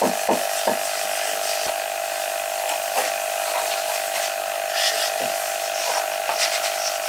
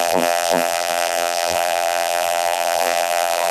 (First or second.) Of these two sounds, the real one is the first